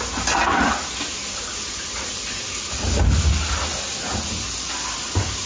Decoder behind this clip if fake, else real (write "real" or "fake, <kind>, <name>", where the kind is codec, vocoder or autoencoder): real